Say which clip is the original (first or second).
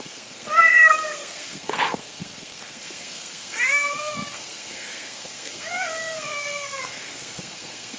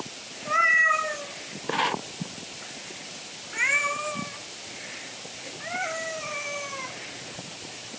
second